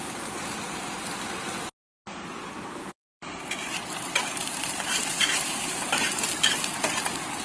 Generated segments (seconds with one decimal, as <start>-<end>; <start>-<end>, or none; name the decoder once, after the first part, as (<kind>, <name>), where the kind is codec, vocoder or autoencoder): 2.4-5.9 (vocoder, BigVGAN v2)